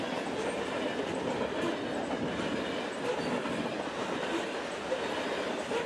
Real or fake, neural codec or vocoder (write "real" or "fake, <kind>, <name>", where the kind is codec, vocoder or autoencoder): real